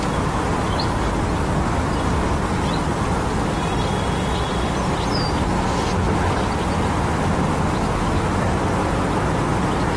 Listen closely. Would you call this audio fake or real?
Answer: real